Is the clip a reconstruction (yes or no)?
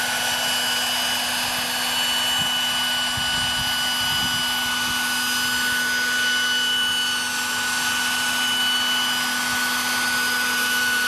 no